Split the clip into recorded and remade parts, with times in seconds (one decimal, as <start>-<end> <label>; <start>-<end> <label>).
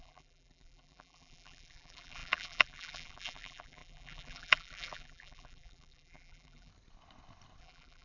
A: 0.0-6.7 remade; 6.7-7.6 recorded; 7.6-8.0 remade